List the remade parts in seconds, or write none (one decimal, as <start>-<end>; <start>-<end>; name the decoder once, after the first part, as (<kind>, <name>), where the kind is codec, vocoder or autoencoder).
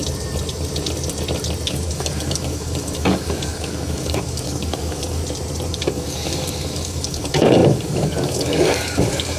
1.7-5.2 (codec, DAC); 5.7-9.4